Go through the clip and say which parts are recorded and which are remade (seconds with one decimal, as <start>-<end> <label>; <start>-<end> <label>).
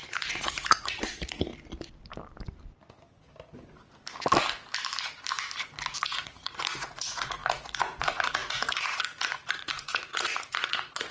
0.0-1.5 remade; 1.5-6.0 recorded; 6.0-11.1 remade